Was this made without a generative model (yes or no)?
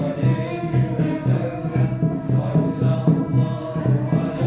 no